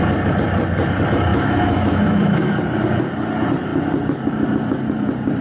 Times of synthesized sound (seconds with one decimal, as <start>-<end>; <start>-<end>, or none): 1.3-2.6